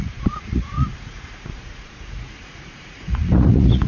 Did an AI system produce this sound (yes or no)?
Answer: yes